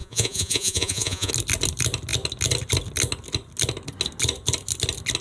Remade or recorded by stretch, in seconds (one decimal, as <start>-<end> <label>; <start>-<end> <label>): 0.0-1.3 remade; 1.3-5.2 recorded